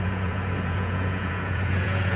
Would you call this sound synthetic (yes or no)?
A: yes